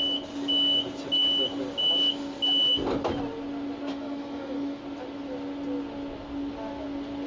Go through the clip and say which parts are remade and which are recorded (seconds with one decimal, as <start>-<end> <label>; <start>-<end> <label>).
0.0-3.9 recorded; 3.9-4.8 remade; 4.8-7.3 recorded

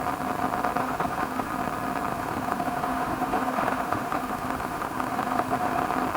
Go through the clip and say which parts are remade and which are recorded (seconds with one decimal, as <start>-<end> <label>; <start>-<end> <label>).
0.0-0.8 recorded; 0.8-1.5 remade; 1.5-2.1 recorded; 2.1-5.8 remade; 5.8-6.2 recorded

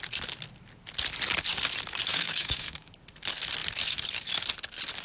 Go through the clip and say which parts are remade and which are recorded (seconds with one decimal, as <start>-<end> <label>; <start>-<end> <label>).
0.0-2.1 recorded; 2.1-2.9 remade; 2.9-5.0 recorded

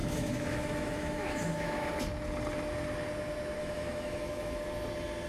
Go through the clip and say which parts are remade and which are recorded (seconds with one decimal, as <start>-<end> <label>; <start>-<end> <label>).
0.0-1.9 remade; 1.9-3.6 recorded; 3.6-4.6 remade; 4.6-5.3 recorded

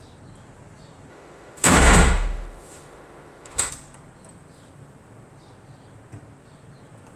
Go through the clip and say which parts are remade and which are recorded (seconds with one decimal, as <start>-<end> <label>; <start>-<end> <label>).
0.0-1.1 recorded; 1.1-3.7 remade; 3.7-7.2 recorded

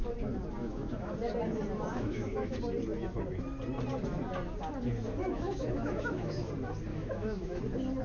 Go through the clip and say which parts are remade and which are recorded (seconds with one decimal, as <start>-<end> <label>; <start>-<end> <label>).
0.0-0.6 recorded; 0.6-1.1 remade; 1.1-1.9 recorded; 1.9-2.6 remade; 2.6-5.2 recorded; 5.2-6.5 remade; 6.5-6.9 recorded; 6.9-7.6 remade; 7.6-8.0 recorded

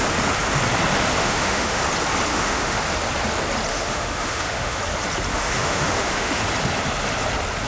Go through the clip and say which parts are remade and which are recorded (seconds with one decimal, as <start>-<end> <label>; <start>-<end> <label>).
0.0-1.2 recorded; 1.2-1.8 remade; 1.8-2.3 recorded; 2.3-2.8 remade; 2.8-3.7 recorded; 3.7-4.8 remade; 4.8-5.3 recorded; 5.3-6.4 remade; 6.4-7.7 recorded

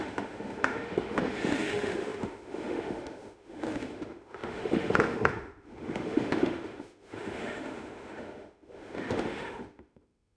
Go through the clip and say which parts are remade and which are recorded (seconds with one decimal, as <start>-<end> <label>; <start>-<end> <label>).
0.0-10.4 remade